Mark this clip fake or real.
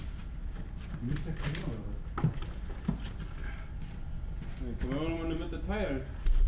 real